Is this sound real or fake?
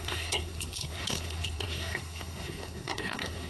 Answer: fake